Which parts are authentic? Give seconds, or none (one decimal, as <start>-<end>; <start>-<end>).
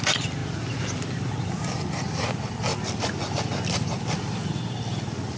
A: 0.0-5.4